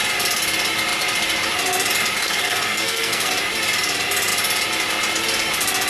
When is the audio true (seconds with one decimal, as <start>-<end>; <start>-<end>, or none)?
0.0-2.2; 3.3-5.9